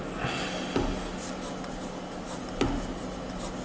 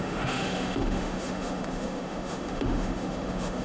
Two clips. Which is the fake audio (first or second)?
second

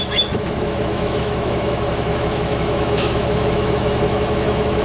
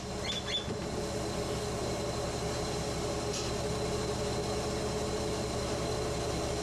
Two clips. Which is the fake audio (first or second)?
first